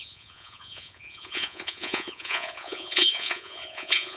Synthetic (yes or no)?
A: yes